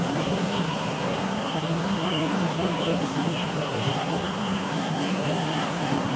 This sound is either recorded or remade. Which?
remade